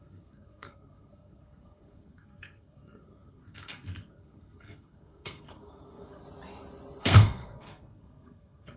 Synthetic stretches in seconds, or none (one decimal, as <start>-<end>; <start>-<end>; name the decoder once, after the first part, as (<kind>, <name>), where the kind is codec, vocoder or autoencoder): 0.0-6.2 (codec, SNAC); 7.0-8.8